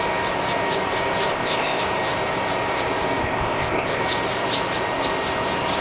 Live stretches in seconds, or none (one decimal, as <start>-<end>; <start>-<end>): 0.0-1.3; 1.8-3.2; 4.0-5.8